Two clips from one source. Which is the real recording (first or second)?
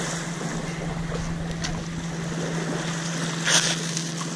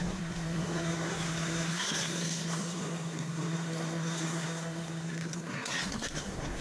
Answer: first